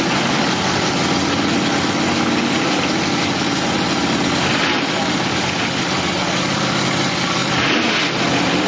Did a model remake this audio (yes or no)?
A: no